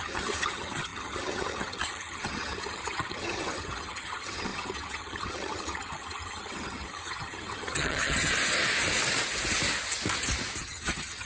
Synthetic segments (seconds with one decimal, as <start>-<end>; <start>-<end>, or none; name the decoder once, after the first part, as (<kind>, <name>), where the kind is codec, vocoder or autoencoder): 0.0-8.3 (vocoder, HiFi-GAN); 10.6-11.3